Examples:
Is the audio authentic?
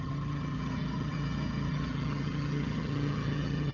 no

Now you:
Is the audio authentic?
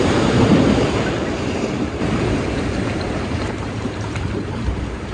no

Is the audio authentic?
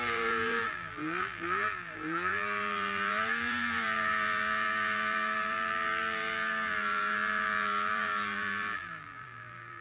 no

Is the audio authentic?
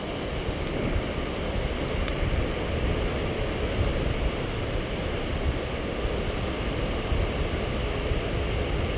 yes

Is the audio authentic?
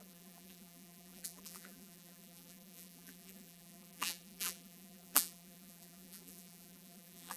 no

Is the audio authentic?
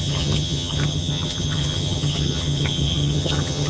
no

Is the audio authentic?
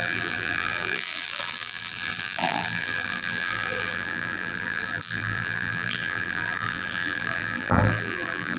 no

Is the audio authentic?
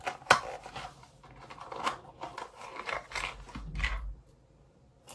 yes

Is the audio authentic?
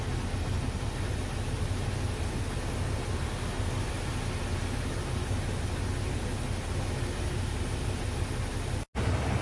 yes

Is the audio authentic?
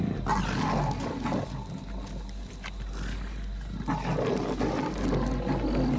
yes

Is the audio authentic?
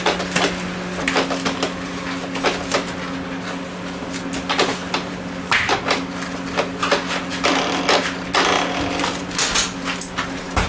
yes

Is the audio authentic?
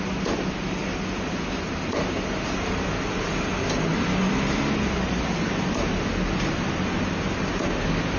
yes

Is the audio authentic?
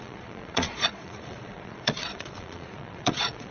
no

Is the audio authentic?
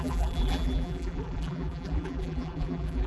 no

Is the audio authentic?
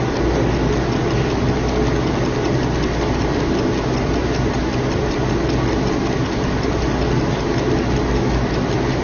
yes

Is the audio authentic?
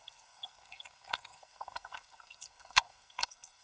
no